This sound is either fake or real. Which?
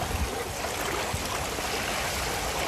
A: real